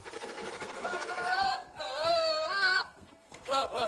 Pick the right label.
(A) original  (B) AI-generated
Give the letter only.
B